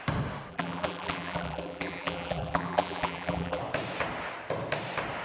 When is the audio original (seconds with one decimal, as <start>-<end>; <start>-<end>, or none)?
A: 0.0-0.5; 3.6-5.2